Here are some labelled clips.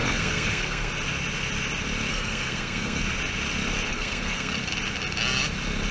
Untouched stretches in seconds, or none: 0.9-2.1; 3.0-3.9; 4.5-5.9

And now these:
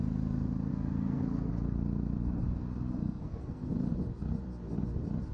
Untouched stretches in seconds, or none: 0.0-0.7; 1.5-3.0; 3.7-5.3

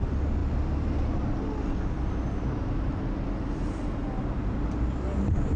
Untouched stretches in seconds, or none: 0.0-5.6